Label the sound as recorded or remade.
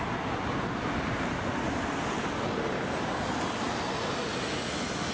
recorded